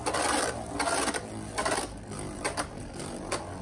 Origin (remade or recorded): recorded